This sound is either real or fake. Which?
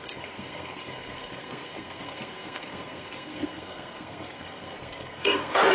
fake